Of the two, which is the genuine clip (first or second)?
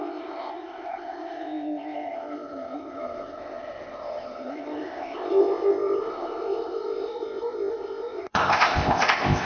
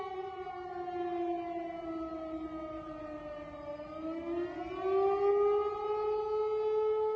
second